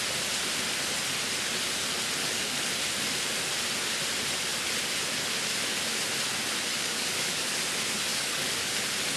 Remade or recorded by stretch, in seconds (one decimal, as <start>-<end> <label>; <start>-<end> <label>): 0.0-2.2 recorded; 2.2-2.7 remade; 2.7-6.7 recorded; 6.7-7.5 remade; 7.5-8.1 recorded; 8.1-8.7 remade; 8.7-9.2 recorded